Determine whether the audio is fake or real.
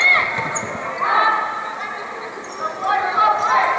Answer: real